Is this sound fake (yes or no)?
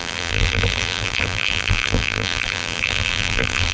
yes